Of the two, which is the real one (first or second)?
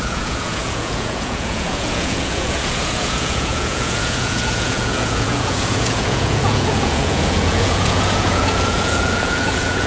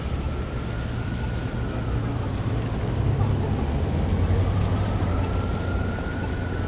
second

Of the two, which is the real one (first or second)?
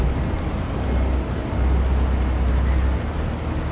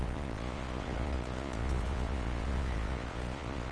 first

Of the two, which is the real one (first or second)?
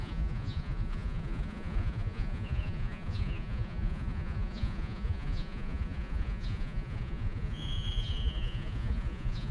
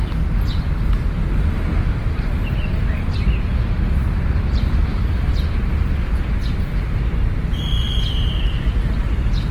second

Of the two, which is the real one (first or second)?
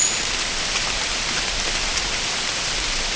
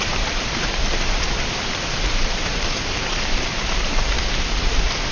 first